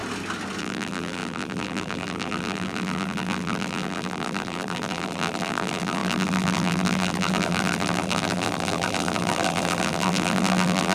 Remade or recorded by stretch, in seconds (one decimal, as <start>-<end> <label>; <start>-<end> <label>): 0.0-0.6 recorded; 0.6-10.9 remade